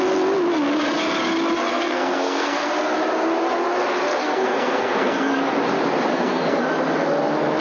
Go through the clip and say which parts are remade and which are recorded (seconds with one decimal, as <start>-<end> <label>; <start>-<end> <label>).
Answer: 0.0-1.7 recorded; 1.7-2.7 remade; 2.7-4.1 recorded; 4.1-5.3 remade; 5.3-6.1 recorded; 6.1-6.6 remade; 6.6-7.6 recorded